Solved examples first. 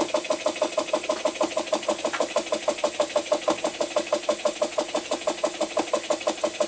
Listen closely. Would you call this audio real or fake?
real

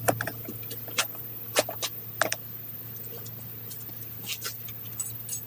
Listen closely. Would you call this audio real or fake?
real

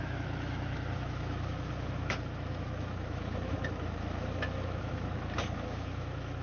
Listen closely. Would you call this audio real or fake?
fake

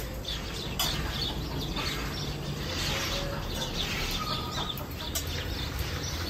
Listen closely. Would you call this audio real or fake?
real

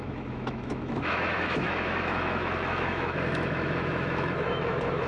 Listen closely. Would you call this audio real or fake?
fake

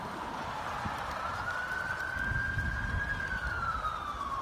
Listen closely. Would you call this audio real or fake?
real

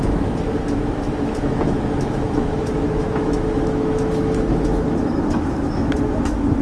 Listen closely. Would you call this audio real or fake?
fake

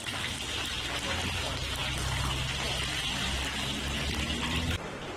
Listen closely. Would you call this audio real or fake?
real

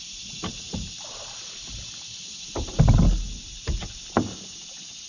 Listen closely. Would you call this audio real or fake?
real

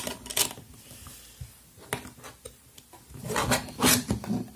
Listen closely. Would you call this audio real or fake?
real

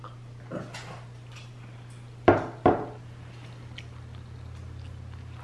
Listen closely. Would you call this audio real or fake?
real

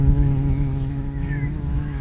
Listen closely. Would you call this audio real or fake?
fake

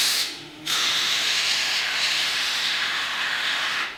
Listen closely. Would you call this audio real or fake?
fake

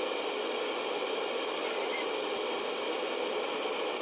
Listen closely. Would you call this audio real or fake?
real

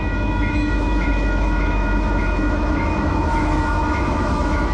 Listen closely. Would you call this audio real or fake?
fake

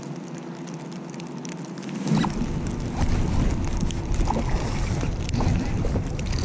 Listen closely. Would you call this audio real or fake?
real